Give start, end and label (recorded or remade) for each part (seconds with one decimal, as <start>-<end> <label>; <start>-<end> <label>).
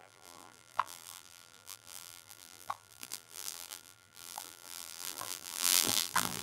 0.0-6.4 remade